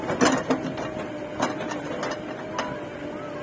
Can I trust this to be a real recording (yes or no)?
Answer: yes